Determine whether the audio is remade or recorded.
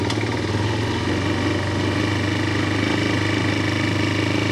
recorded